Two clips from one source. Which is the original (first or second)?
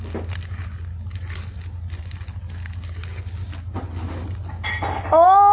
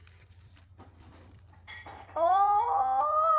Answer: first